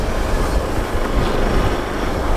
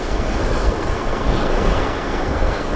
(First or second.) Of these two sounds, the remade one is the second